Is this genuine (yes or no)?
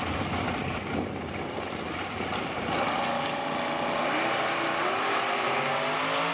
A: yes